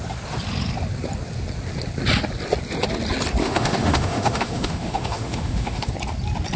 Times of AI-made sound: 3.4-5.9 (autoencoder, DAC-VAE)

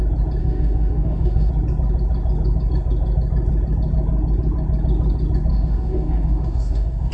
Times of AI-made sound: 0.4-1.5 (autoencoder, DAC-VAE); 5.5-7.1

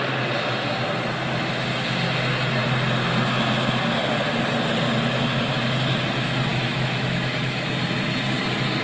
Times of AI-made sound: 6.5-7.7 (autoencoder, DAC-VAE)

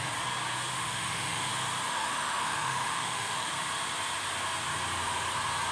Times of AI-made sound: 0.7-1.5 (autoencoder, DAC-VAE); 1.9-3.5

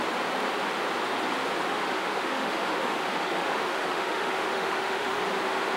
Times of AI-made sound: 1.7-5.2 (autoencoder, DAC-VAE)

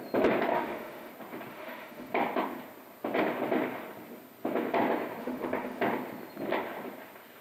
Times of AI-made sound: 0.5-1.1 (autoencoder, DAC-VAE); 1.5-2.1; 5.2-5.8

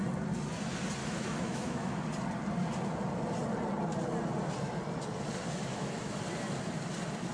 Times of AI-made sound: 1.0-2.0 (autoencoder, DAC-VAE); 5.6-6.2

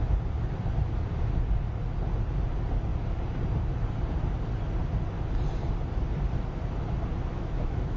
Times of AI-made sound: 7.3-8.0 (autoencoder, DAC-VAE)